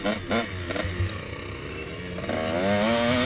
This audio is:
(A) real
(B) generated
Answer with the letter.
A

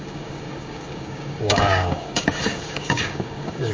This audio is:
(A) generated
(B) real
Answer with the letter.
A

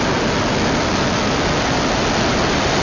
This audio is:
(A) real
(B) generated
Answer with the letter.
A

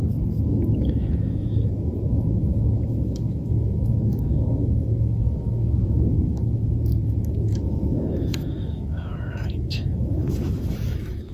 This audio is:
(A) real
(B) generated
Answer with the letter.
B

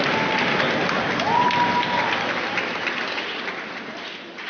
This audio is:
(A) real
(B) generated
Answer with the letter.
A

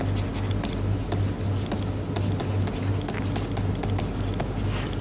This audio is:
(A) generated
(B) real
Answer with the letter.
B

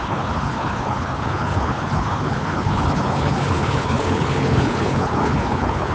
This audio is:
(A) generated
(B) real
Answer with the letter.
A